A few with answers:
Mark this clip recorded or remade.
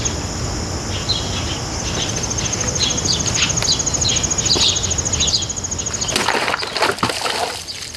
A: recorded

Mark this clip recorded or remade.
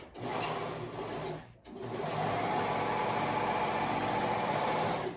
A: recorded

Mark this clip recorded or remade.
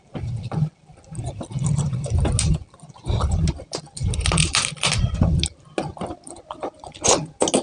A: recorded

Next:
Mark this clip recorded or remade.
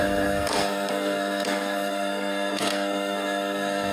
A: remade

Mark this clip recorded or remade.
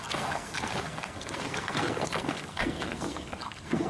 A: remade